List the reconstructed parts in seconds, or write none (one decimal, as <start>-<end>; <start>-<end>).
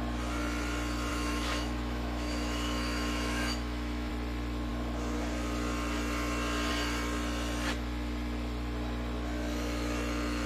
1.1-4.1